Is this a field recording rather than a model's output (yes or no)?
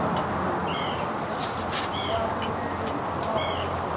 yes